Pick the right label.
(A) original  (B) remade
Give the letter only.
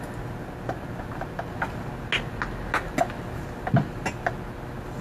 A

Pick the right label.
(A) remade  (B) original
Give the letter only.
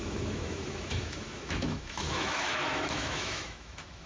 A